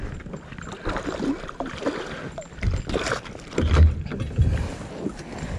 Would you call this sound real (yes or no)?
yes